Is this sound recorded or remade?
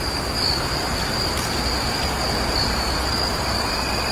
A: recorded